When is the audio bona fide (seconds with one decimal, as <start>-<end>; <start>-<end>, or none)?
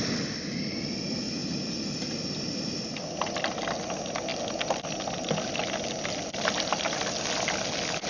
0.0-8.1